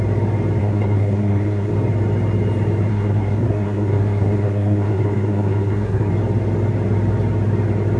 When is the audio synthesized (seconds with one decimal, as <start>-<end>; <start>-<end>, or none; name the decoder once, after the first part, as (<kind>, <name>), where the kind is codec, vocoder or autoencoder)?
0.6-1.7 (codec, SNAC); 2.9-6.1